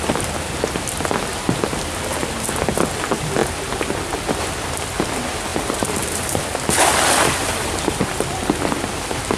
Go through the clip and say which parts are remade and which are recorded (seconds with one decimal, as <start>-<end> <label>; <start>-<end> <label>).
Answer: 0.0-5.5 recorded; 5.5-6.4 remade; 6.4-7.5 recorded; 7.5-8.0 remade; 8.0-9.4 recorded